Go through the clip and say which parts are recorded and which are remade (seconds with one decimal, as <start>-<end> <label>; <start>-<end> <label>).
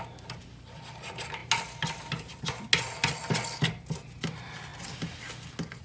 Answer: 0.0-5.8 recorded